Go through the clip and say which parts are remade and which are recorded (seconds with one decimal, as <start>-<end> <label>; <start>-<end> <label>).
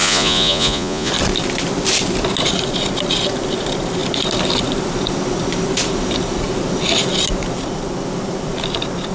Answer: 0.0-1.1 remade; 1.1-9.1 recorded